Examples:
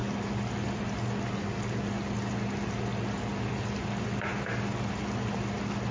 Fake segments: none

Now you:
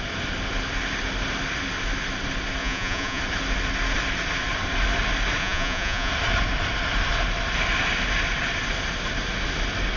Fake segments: 2.6-3.2 (vocoder, Vocos); 5.4-6.1

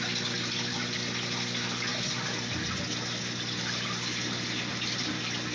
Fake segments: none

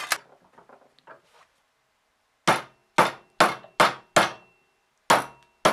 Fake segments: none

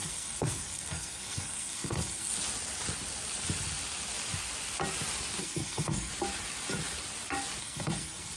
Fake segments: 0.0-2.3 (codec, SNAC); 5.4-6.1; 7.6-8.4

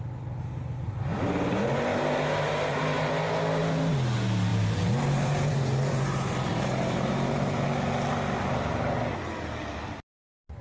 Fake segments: 1.9-3.1 (vocoder, BigVGAN v2); 4.5-7.5

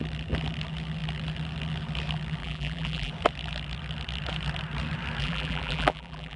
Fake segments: 2.4-3.1 (vocoder, BigVGAN v2); 5.2-6.4

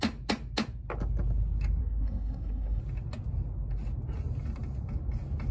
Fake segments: 1.8-2.8 (codec, SNAC)